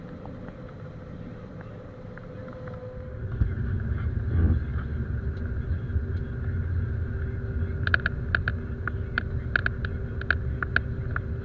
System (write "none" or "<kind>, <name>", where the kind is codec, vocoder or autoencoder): none